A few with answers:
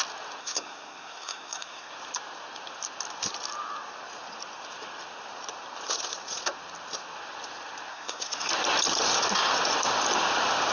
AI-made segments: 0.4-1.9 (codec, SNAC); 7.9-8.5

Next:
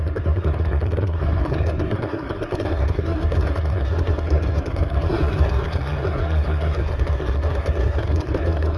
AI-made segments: 0.0-8.8 (codec, SNAC)

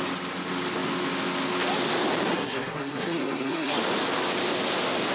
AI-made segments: 2.3-3.8 (codec, SNAC)

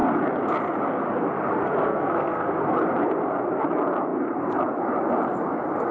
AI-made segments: 1.8-2.6 (codec, SNAC)

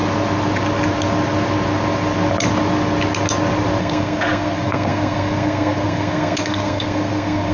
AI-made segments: 3.8-7.5 (codec, SNAC)

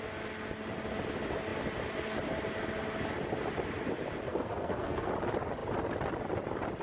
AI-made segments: 4.3-5.1 (codec, SNAC)